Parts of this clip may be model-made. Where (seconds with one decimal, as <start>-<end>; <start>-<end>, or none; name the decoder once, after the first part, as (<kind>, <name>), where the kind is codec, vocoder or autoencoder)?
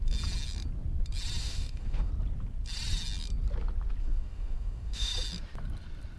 1.4-2.1 (autoencoder, DAC-VAE); 4.0-5.1